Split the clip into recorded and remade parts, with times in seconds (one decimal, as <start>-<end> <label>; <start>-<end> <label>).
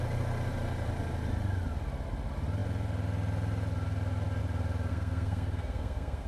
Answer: 0.0-4.9 recorded; 4.9-6.3 remade